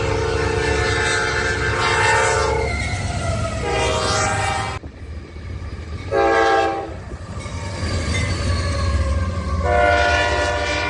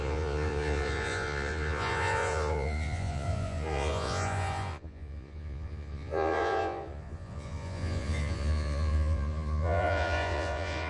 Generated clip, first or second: second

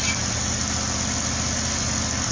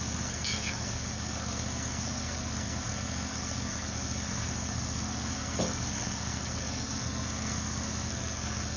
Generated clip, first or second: second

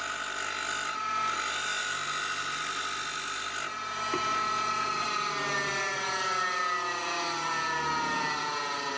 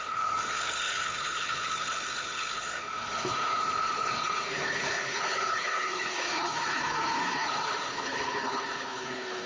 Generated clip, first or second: second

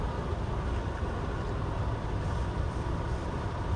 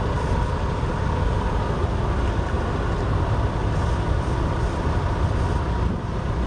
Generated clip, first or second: first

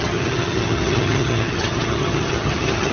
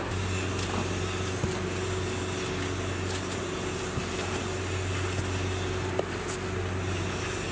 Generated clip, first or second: first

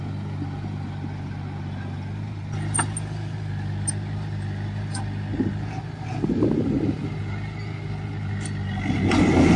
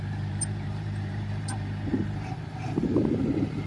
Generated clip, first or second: second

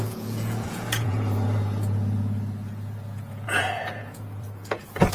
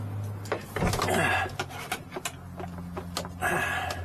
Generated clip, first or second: first